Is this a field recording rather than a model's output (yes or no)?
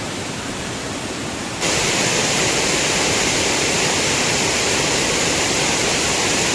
no